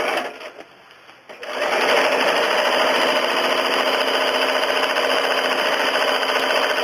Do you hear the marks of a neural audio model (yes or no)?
no